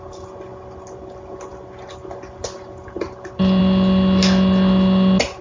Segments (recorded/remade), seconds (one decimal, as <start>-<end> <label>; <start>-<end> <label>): 0.0-5.4 recorded